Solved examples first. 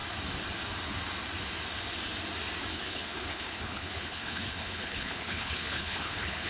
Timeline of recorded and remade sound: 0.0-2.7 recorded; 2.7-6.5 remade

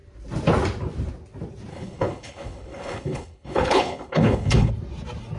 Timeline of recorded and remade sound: 0.0-1.7 recorded; 1.7-4.7 remade; 4.7-5.4 recorded

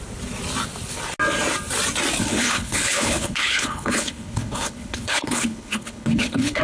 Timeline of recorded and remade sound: 0.0-2.2 recorded; 2.2-6.6 remade

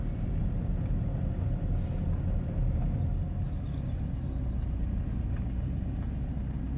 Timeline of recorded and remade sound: 0.0-6.8 recorded